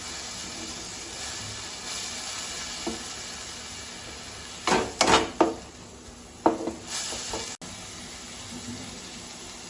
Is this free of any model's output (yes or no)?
yes